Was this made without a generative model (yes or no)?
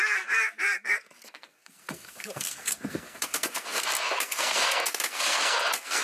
no